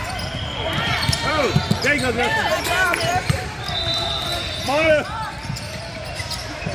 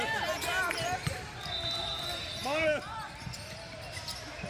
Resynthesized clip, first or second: first